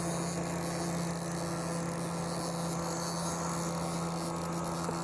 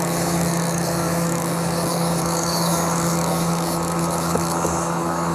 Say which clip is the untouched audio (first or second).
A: first